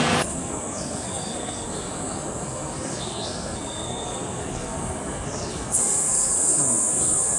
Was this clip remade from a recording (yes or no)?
yes